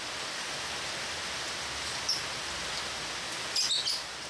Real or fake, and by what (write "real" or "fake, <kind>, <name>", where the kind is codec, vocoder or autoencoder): real